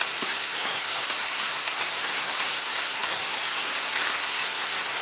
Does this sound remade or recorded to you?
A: remade